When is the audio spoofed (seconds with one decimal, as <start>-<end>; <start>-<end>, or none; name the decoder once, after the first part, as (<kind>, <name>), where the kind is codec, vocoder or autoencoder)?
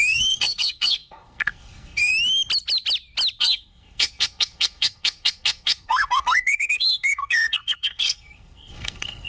0.0-2.1 (codec, SNAC); 3.4-9.3